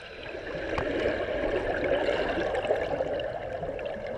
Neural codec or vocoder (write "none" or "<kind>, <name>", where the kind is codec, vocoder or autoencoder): none